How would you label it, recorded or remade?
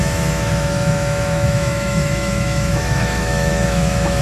remade